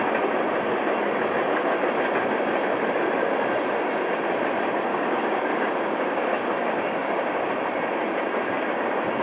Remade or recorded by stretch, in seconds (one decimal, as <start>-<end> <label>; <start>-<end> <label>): 0.0-4.9 recorded; 4.9-7.5 remade; 7.5-9.2 recorded